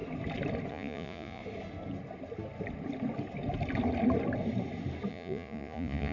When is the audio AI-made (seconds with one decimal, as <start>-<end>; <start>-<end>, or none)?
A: 0.7-1.4; 5.1-6.1